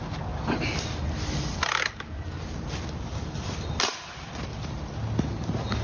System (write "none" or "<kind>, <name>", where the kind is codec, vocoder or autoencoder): none